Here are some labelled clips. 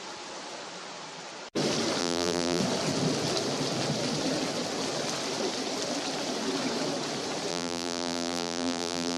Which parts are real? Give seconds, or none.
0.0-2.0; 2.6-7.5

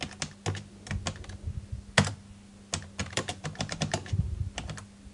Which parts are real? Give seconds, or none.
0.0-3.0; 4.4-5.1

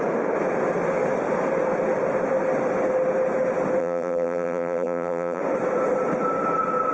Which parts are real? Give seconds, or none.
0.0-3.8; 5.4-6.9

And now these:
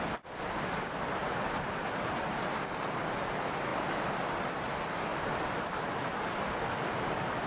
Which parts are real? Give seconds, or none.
0.0-1.2; 2.2-5.1; 6.1-7.5

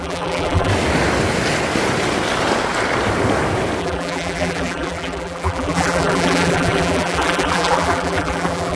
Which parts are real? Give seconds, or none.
0.7-3.8

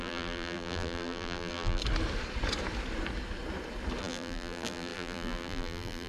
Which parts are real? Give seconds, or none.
1.8-4.0

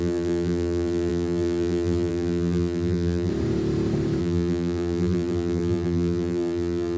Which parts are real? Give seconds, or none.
3.3-4.2

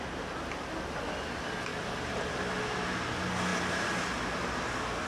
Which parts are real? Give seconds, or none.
0.0-1.7; 2.6-5.1